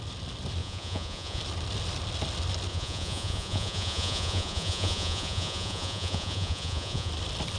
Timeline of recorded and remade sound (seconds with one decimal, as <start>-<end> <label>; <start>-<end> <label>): 0.0-0.6 recorded; 0.6-1.4 remade; 1.4-2.7 recorded; 2.7-7.1 remade; 7.1-7.6 recorded